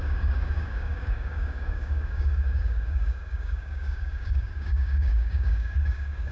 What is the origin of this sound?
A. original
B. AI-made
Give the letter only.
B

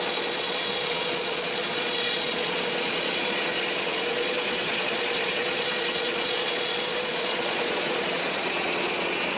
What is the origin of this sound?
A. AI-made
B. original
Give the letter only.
A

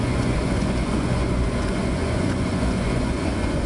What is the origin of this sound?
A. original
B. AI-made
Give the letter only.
B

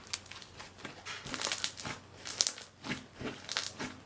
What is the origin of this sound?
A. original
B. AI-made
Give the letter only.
A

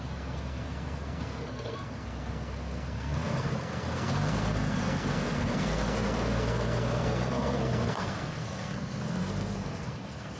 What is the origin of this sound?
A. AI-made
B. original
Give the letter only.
A